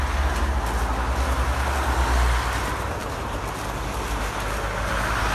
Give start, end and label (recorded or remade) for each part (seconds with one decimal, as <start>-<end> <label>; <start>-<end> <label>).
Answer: 0.0-5.3 recorded